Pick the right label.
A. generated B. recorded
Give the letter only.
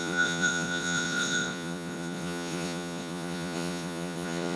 A